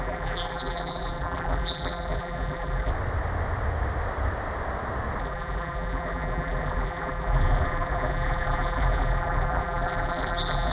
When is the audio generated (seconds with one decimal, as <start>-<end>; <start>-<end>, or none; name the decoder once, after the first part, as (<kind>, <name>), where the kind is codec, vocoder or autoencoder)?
0.0-2.9 (vocoder, BigVGAN v2); 5.2-10.7